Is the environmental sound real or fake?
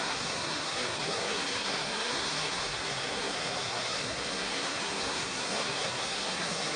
fake